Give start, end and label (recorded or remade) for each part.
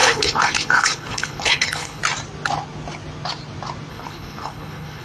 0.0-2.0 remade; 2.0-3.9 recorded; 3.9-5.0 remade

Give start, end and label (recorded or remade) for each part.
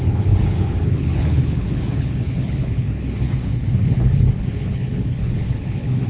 0.0-6.1 remade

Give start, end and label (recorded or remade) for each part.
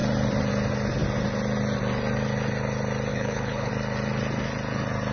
0.0-3.1 recorded; 3.1-3.7 remade; 3.7-5.1 recorded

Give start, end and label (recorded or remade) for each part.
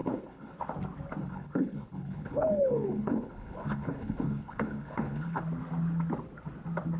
0.0-0.6 remade; 0.6-1.2 recorded; 1.2-5.4 remade; 5.4-7.0 recorded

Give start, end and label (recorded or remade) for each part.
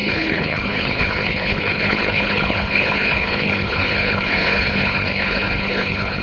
0.0-6.2 remade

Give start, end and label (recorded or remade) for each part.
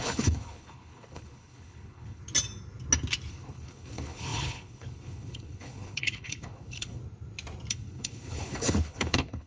0.0-2.2 remade; 2.2-3.3 recorded; 3.3-7.0 remade; 7.0-7.7 recorded; 7.7-9.5 remade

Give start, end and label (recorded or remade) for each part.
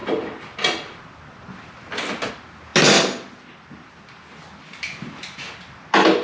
0.0-6.2 recorded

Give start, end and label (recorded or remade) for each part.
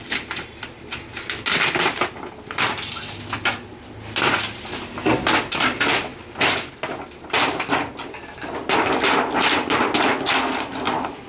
0.0-11.3 recorded